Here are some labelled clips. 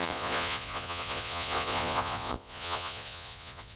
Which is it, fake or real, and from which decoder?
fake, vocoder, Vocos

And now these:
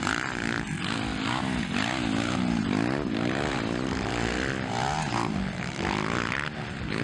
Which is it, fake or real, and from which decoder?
real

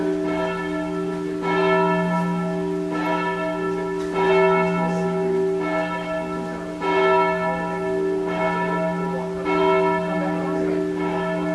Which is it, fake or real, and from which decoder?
real